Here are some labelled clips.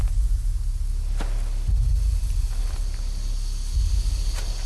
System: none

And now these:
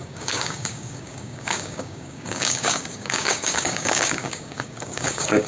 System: codec, DAC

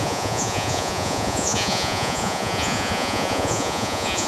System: vocoder, Vocos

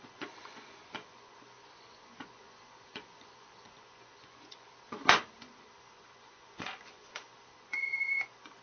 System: vocoder, Vocos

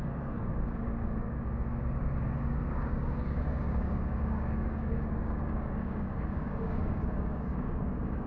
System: codec, DAC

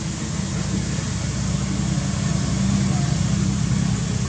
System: none